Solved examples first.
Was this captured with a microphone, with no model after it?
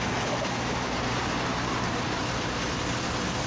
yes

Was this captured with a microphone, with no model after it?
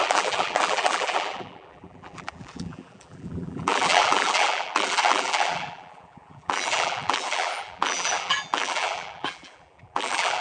no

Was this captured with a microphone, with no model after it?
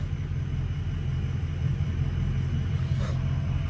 yes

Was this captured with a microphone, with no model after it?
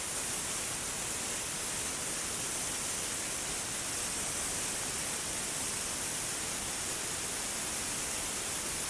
yes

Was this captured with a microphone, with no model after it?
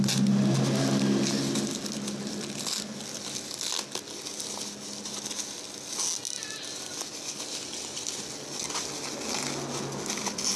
yes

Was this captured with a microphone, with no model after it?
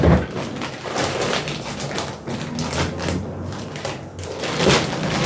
yes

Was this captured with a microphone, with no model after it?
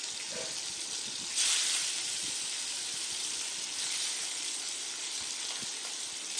yes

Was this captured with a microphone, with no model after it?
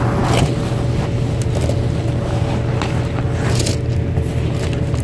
yes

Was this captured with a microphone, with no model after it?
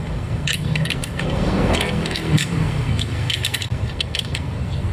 no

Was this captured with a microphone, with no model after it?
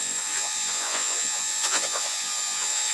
no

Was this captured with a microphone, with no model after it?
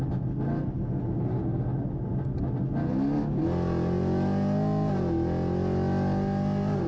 yes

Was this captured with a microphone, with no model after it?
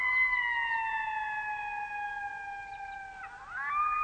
yes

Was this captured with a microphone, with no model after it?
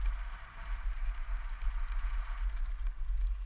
yes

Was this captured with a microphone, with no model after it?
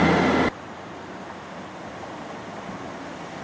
yes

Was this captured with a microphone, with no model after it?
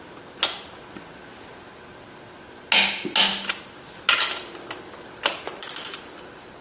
yes